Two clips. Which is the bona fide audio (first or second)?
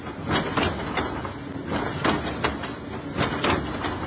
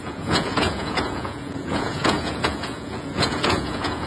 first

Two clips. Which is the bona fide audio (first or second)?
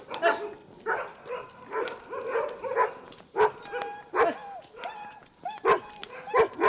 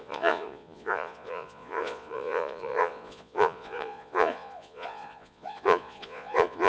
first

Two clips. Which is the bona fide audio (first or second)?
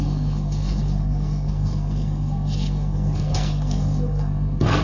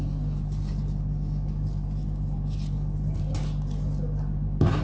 second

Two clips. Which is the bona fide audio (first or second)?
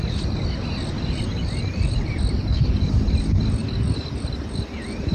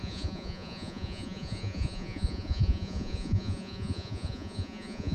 first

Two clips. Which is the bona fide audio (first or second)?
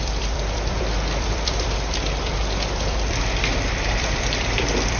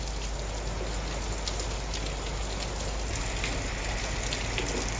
second